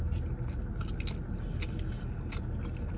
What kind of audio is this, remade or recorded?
recorded